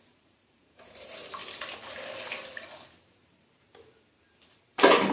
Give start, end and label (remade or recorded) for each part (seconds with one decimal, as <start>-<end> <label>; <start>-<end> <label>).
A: 0.0-1.4 remade; 1.4-3.1 recorded; 3.1-5.1 remade